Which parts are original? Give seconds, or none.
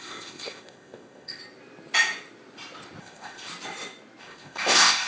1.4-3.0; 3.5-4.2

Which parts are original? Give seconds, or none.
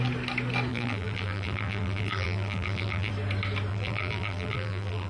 0.0-0.7; 3.1-3.7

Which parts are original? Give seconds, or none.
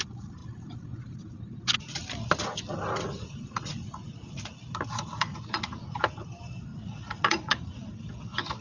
0.0-3.2; 4.5-5.3; 6.0-6.7; 7.9-8.6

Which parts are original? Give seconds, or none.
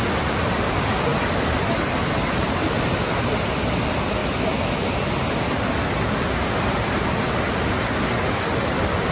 0.0-9.1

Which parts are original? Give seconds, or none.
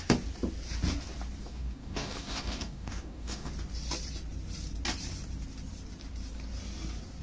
0.0-1.4; 3.5-7.2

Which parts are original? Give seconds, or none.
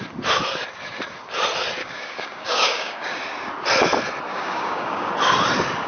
0.0-1.8; 3.2-4.3; 5.1-5.9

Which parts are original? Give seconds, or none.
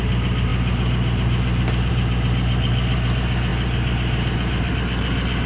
0.0-5.5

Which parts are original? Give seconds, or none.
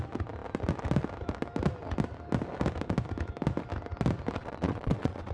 0.0-4.4